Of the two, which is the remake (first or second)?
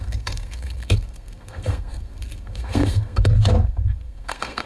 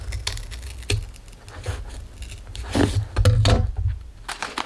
first